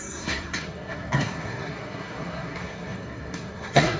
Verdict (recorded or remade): remade